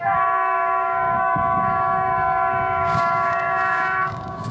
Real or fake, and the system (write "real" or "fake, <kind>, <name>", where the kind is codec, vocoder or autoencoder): fake, codec, DAC